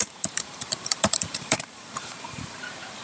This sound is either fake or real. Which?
fake